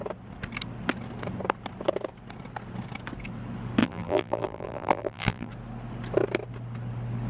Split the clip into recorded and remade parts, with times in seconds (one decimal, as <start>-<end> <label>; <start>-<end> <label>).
0.0-3.8 recorded; 3.8-5.5 remade; 5.5-7.3 recorded